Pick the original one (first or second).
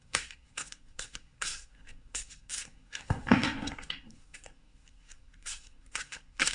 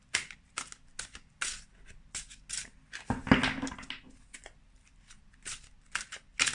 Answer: second